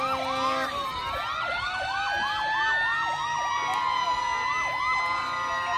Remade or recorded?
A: recorded